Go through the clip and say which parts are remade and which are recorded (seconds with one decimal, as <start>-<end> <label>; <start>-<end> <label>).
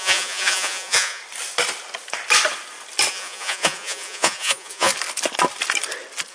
0.0-1.2 remade; 1.2-3.1 recorded; 3.1-4.9 remade; 4.9-6.3 recorded